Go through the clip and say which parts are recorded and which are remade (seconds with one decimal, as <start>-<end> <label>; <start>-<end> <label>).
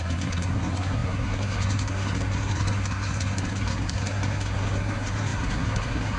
0.0-6.2 remade